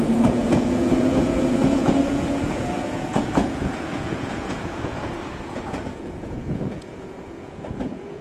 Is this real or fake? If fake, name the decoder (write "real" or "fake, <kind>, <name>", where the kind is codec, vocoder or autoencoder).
fake, vocoder, Vocos